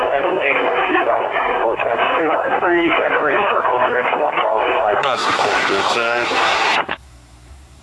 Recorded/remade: remade